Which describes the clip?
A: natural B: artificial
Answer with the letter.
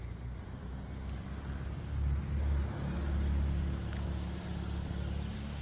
A